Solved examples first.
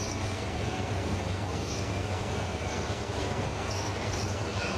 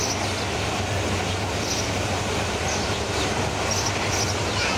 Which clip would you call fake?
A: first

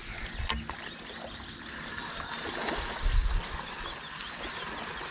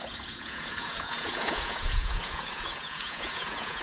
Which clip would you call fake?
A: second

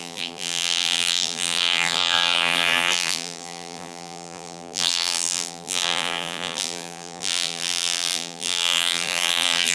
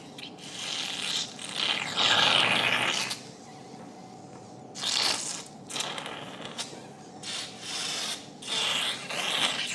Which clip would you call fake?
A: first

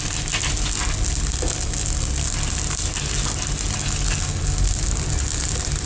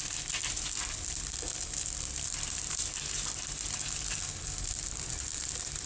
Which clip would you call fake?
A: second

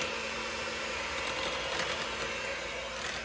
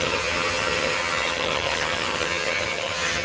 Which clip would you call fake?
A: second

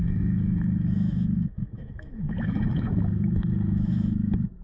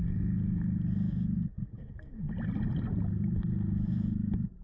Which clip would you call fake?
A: first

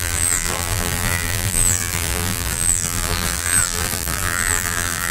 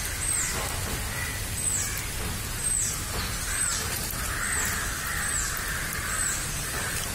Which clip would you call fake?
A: first